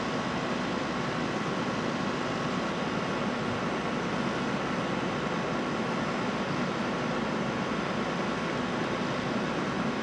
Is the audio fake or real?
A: real